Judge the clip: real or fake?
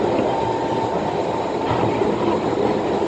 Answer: real